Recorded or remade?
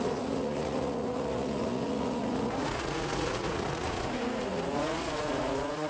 remade